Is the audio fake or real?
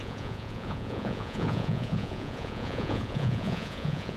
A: fake